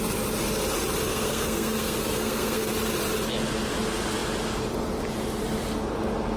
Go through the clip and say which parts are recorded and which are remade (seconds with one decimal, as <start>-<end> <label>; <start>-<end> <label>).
0.0-1.1 recorded; 1.1-2.7 remade; 2.7-6.4 recorded